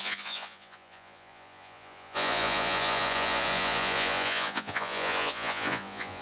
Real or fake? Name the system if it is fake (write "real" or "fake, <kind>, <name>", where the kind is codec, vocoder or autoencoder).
fake, vocoder, Vocos